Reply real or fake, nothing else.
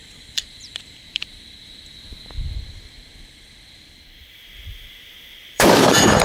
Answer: fake